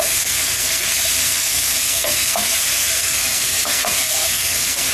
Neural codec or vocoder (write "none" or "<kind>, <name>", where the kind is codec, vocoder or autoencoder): codec, SNAC